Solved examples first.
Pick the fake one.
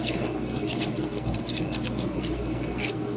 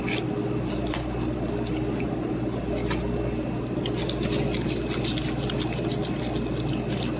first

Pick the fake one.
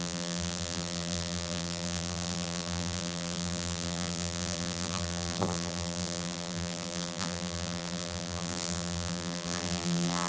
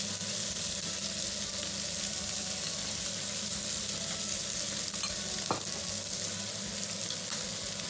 first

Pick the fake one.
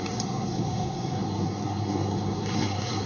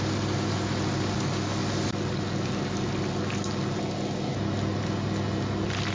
first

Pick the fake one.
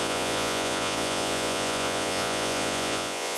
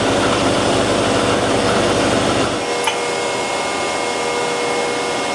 first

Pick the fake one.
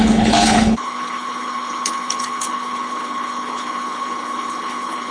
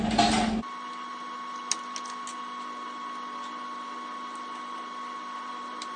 first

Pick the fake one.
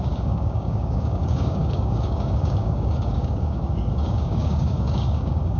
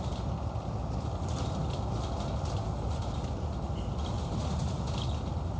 first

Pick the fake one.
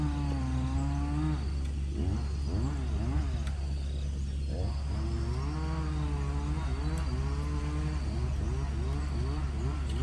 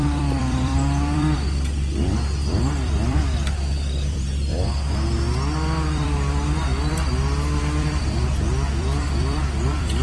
second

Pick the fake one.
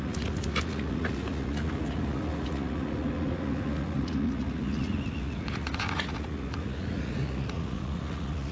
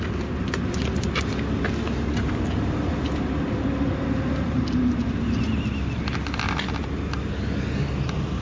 first